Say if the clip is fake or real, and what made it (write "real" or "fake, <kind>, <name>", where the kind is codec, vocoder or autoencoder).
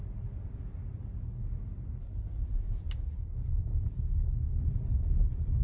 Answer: real